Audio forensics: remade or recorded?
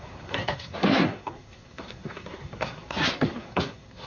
remade